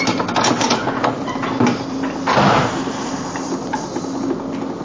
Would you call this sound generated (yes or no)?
no